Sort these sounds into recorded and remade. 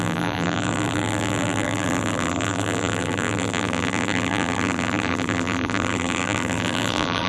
remade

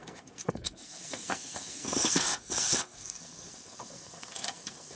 remade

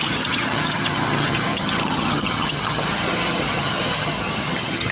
remade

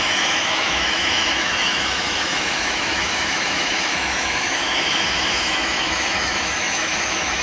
remade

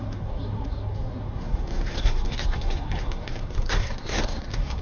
remade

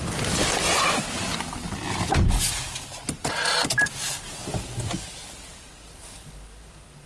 recorded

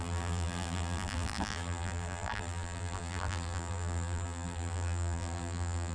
remade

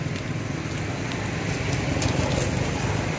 recorded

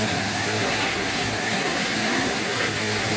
remade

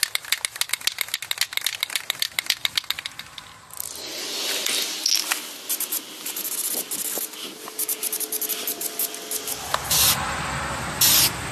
recorded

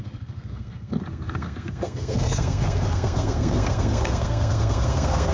remade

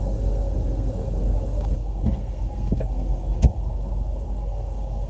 remade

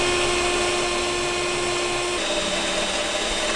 recorded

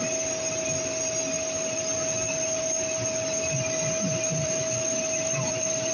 remade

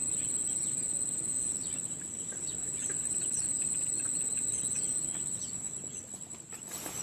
recorded